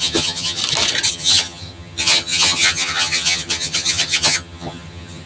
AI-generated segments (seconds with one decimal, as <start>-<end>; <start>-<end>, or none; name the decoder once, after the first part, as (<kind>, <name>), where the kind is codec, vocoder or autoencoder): 0.0-0.6 (vocoder, HiFi-GAN); 1.1-5.3